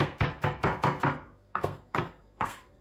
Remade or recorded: remade